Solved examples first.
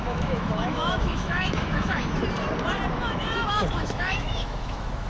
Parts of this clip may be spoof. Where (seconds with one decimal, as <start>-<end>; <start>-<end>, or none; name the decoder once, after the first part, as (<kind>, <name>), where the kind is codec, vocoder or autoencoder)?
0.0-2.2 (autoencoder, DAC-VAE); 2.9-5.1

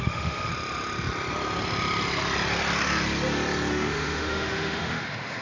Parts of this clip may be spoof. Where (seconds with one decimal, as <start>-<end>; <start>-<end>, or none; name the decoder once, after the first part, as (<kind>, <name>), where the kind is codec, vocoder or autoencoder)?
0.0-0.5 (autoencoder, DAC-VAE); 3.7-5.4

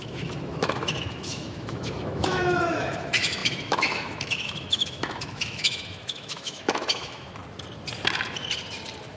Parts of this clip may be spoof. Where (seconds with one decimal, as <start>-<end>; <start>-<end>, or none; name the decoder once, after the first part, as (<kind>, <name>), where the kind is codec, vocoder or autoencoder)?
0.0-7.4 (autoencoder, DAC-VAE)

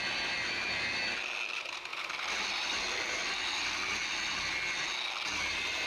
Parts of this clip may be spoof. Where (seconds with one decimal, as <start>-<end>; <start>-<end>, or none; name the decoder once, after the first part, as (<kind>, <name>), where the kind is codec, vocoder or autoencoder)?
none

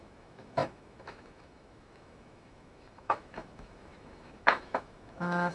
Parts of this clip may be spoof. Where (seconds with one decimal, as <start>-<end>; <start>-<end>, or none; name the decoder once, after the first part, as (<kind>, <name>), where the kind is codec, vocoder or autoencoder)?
0.0-5.5 (autoencoder, DAC-VAE)

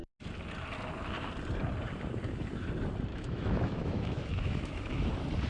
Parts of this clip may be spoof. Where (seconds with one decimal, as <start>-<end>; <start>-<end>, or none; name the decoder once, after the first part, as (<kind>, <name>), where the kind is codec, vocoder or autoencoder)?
3.1-5.1 (autoencoder, DAC-VAE)

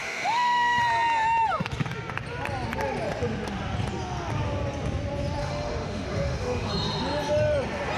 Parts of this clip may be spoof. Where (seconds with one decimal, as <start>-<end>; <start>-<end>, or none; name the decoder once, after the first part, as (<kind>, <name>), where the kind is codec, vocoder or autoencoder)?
0.0-0.8 (autoencoder, DAC-VAE); 5.4-6.7

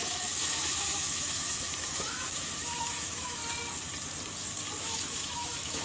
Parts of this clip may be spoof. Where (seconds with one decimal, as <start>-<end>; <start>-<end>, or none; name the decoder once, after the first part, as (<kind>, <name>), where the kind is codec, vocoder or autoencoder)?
0.0-3.4 (autoencoder, DAC-VAE); 4.8-5.8